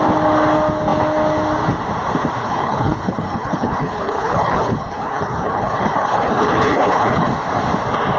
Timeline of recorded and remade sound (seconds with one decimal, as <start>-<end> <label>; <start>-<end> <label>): 0.0-2.4 recorded; 2.4-7.3 remade; 7.3-8.2 recorded